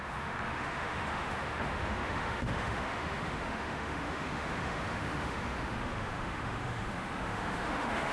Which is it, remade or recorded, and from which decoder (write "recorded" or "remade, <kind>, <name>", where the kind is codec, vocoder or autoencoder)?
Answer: remade, autoencoder, DAC-VAE